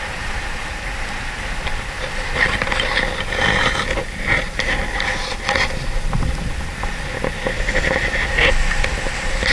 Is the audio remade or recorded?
recorded